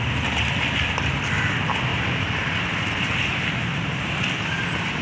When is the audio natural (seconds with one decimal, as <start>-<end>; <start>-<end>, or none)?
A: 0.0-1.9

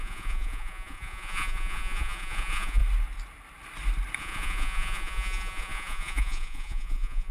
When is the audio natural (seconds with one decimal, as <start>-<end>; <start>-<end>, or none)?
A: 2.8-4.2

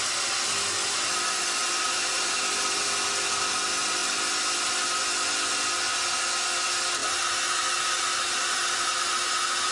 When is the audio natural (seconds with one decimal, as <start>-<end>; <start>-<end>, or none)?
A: 0.0-1.6; 2.4-9.7

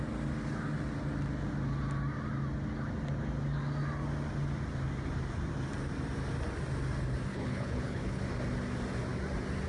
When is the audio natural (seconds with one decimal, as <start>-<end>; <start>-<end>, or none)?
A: 0.0-7.3; 8.2-9.7

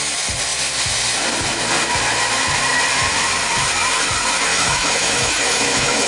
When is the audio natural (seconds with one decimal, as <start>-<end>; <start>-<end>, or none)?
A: 0.0-4.5